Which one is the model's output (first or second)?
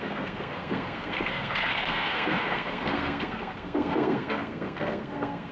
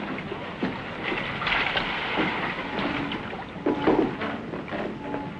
first